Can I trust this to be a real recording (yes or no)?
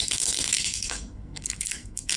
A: no